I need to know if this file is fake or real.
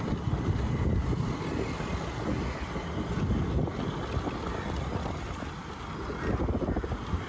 real